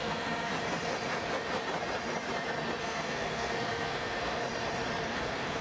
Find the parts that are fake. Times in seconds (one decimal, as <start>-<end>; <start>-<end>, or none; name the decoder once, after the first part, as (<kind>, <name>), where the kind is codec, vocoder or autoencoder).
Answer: 0.0-0.5 (codec, SNAC); 2.8-4.4; 5.0-5.6